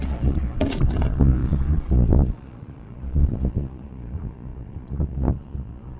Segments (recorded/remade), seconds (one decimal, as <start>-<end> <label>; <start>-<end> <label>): 0.0-6.0 remade